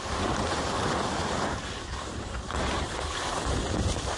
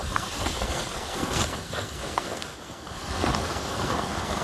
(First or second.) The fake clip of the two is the second